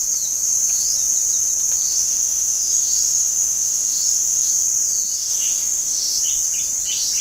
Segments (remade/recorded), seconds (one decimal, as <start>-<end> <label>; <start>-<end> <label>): 0.0-1.9 recorded; 1.9-4.5 remade; 4.5-5.2 recorded; 5.2-6.2 remade; 6.2-7.2 recorded